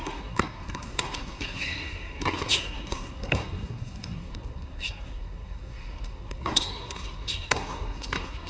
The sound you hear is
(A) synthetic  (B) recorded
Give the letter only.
A